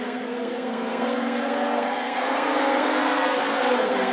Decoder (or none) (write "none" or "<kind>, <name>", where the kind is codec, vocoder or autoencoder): codec, SNAC